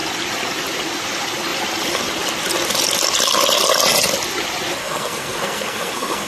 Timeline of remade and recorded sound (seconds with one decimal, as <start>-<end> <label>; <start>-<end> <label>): 0.0-4.8 recorded; 4.8-6.3 remade